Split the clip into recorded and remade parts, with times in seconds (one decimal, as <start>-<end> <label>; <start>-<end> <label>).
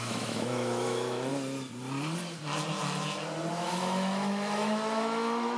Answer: 0.0-1.3 remade; 1.3-3.5 recorded; 3.5-5.6 remade